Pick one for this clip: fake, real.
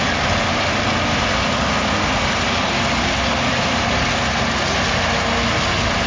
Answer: real